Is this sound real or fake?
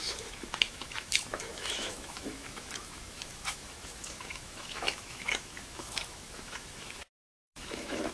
fake